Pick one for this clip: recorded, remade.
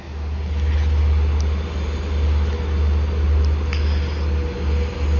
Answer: recorded